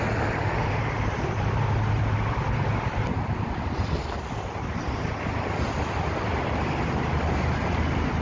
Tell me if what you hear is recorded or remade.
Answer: recorded